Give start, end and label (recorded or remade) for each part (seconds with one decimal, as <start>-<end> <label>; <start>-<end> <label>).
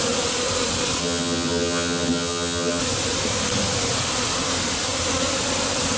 0.0-1.0 recorded; 1.0-2.8 remade; 2.8-6.0 recorded